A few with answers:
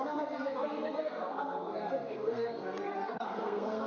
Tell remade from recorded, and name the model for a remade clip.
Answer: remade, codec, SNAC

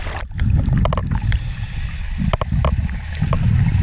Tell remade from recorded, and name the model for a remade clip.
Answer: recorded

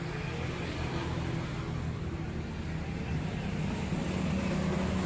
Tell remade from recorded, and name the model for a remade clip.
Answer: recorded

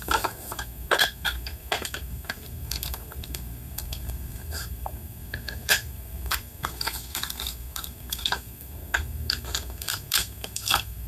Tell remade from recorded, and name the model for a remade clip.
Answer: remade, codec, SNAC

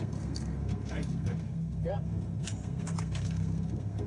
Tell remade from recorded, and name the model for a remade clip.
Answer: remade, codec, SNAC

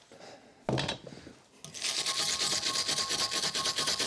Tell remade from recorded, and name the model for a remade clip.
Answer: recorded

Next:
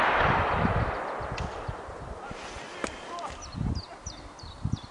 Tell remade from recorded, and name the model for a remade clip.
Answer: recorded